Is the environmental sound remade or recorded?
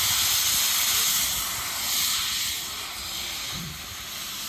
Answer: recorded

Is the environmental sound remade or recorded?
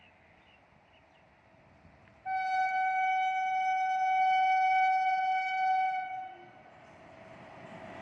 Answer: recorded